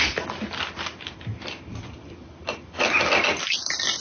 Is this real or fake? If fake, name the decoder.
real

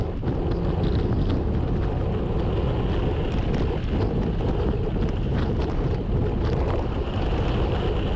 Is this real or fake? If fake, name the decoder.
real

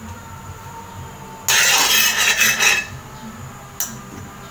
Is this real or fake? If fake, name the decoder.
real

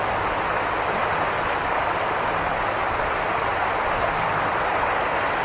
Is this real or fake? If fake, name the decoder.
real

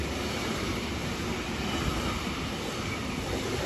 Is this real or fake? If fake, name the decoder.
real